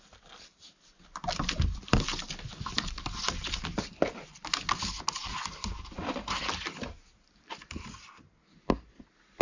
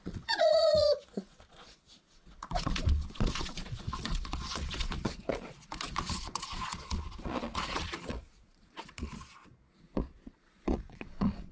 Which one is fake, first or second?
second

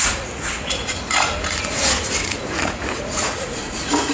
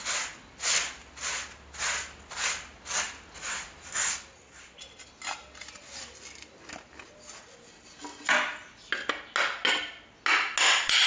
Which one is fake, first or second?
first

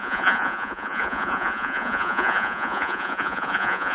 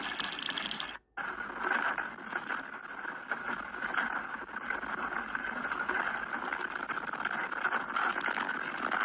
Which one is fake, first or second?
first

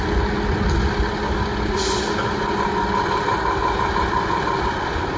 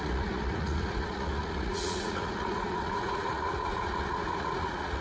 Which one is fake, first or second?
second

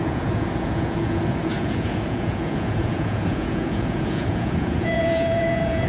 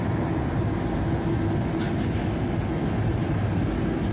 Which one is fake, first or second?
first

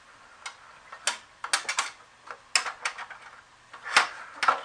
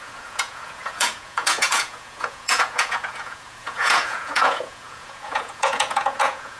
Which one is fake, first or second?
second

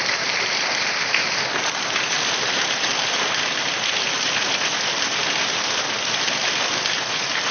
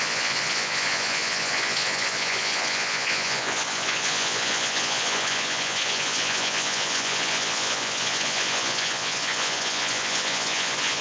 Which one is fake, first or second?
second